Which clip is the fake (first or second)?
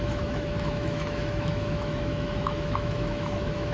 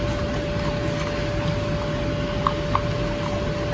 first